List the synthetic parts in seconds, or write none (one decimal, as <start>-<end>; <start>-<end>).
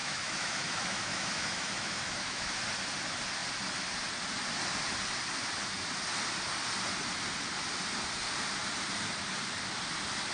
0.0-2.5